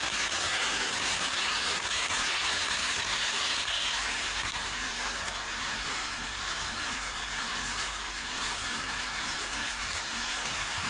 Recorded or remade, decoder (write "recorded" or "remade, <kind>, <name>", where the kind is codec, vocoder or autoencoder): remade, codec, SNAC